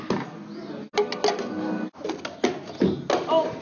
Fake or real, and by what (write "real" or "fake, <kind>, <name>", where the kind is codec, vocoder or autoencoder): real